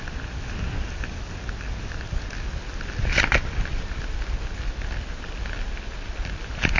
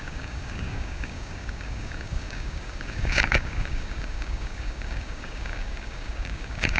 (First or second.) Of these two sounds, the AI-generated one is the second